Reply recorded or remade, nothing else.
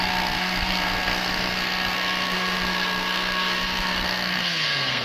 remade